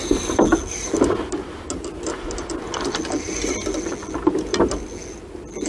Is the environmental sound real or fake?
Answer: real